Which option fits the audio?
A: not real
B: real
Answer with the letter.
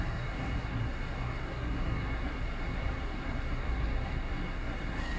A